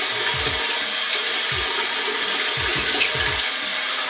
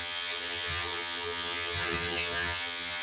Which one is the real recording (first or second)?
first